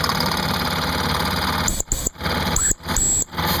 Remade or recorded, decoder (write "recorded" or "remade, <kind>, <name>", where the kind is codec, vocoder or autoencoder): recorded